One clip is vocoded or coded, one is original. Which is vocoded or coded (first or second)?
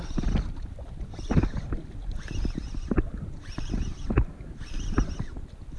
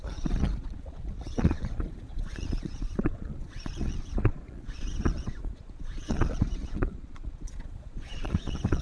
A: second